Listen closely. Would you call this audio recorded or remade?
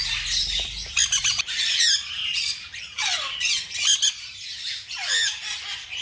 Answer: recorded